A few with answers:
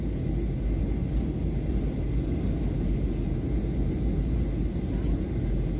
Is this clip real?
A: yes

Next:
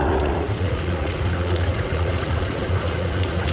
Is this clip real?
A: no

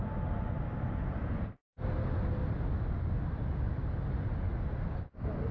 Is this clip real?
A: yes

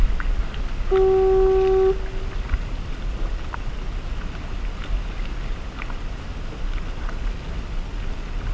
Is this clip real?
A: yes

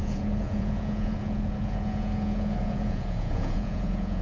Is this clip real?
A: no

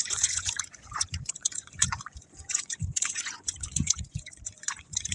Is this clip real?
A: no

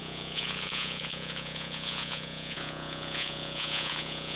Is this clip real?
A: no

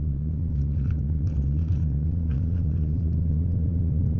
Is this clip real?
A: no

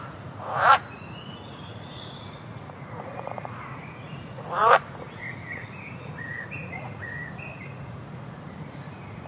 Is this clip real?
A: no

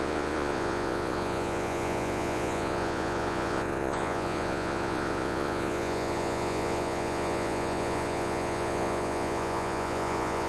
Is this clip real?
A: no